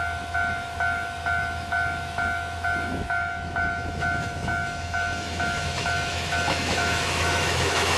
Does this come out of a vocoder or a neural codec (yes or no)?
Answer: yes